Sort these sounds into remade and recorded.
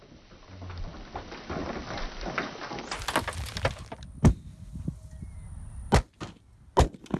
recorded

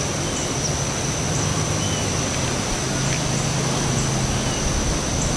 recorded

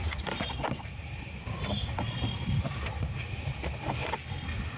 recorded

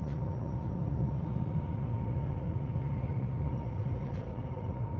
remade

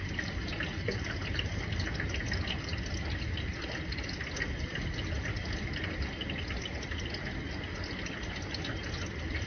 recorded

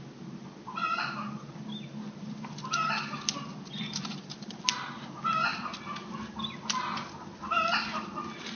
recorded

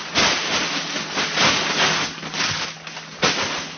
recorded